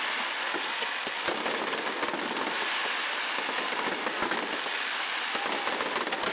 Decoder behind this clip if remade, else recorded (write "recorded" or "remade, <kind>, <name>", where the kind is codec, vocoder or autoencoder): recorded